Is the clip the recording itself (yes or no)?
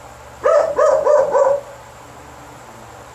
yes